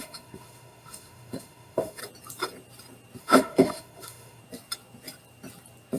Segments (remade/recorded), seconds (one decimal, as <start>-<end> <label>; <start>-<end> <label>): 0.0-2.0 remade; 2.0-3.2 recorded; 3.2-4.4 remade; 4.4-6.0 recorded